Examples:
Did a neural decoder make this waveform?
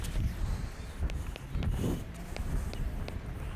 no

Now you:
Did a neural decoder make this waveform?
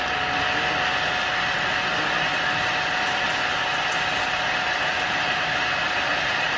no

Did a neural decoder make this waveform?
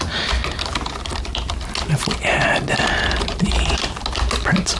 no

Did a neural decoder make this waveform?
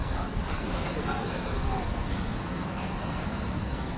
yes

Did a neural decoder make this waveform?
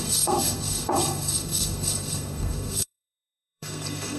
yes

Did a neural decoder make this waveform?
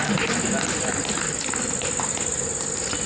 no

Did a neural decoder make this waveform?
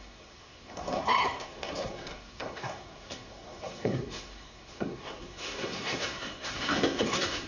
yes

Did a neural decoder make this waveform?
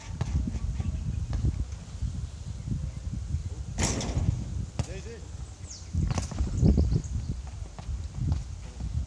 no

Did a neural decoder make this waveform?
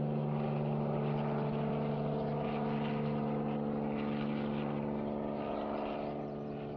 no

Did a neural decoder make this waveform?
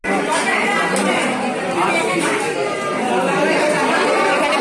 no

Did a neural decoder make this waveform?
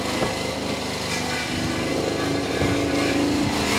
no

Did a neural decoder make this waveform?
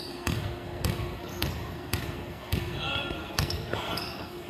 yes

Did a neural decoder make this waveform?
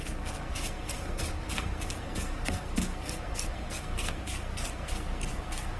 yes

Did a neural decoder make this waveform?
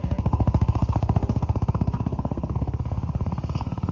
yes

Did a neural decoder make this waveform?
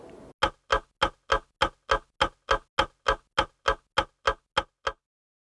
no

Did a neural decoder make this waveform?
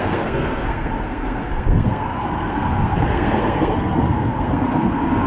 yes